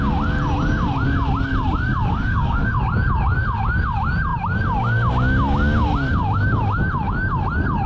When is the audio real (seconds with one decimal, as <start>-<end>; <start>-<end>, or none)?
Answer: 0.0-2.1; 2.8-7.9